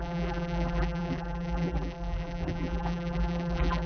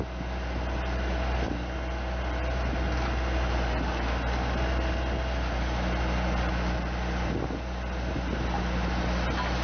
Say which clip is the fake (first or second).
first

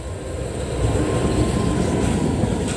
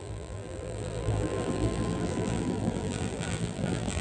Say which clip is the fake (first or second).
second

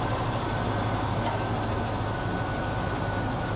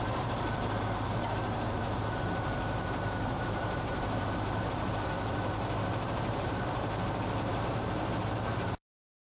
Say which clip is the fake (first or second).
second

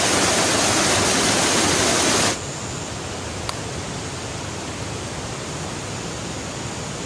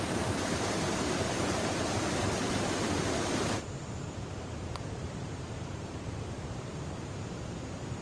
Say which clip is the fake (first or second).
second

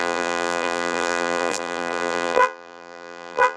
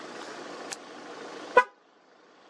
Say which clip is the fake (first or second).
first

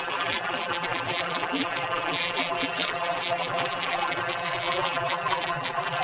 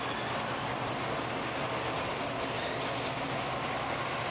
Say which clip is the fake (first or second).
first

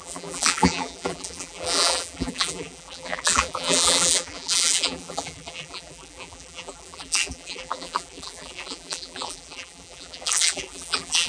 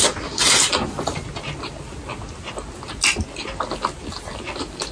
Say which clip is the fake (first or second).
first